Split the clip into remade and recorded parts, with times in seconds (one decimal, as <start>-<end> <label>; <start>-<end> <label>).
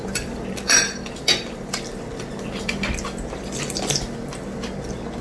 0.0-2.7 remade; 2.7-5.2 recorded